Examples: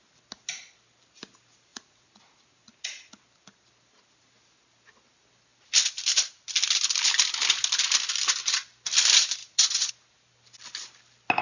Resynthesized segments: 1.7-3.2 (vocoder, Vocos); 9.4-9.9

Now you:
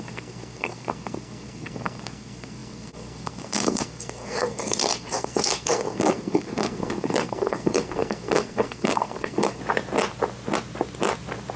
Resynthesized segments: 0.0-9.6 (codec, SNAC)

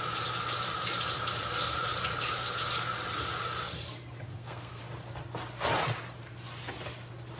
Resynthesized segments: 4.3-4.8 (codec, SNAC)

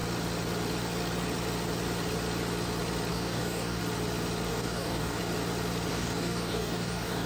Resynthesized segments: 3.1-3.8 (codec, DAC); 4.5-5.2; 5.9-7.3

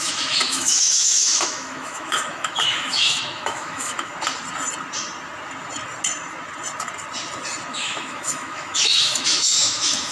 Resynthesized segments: 0.0-4.1 (autoencoder, DAC-VAE); 7.7-10.1